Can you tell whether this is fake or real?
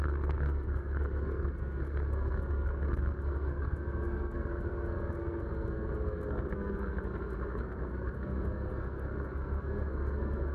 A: fake